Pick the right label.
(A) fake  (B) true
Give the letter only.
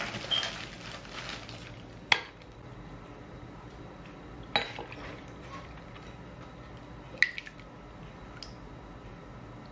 B